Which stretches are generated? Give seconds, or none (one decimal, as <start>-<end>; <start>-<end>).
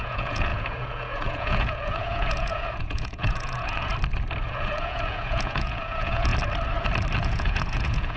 0.0-3.9; 4.5-6.3; 7.2-8.2